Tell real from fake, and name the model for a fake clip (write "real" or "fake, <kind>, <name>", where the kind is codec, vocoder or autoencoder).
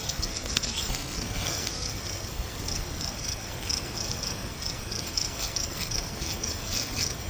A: fake, codec, SNAC